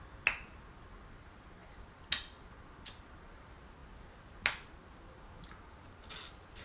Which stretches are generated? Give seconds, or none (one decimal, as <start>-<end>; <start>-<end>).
none